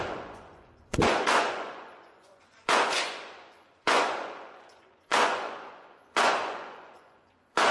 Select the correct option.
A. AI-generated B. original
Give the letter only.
A